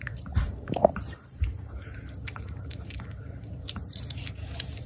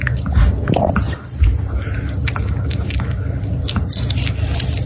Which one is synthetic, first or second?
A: first